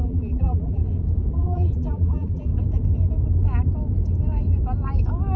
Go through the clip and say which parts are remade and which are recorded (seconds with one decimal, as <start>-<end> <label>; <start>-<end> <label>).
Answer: 0.0-0.8 remade; 0.8-1.3 recorded; 1.3-2.5 remade; 2.5-5.4 recorded